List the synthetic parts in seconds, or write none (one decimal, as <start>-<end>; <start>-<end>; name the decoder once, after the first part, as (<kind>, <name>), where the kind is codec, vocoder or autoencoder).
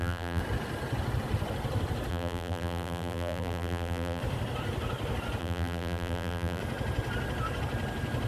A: 0.0-0.4 (vocoder, BigVGAN v2); 2.1-4.2; 5.4-6.6